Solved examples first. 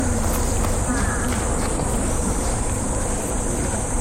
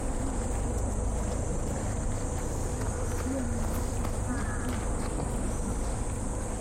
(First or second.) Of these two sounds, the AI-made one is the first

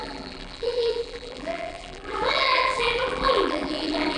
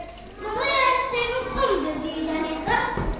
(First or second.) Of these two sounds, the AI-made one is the first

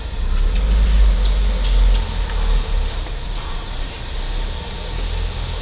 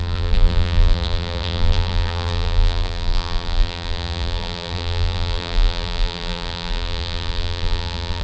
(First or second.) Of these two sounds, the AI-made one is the second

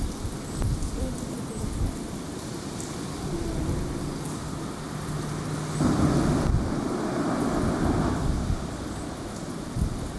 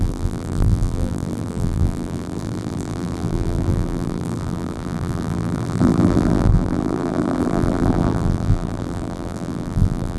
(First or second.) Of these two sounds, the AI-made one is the second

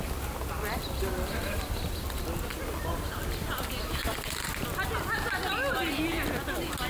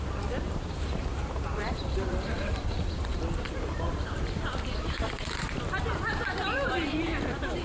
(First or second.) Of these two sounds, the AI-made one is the second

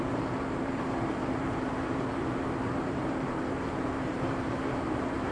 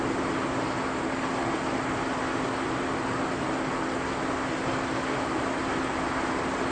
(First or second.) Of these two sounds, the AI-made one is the first